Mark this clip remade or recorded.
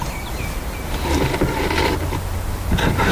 recorded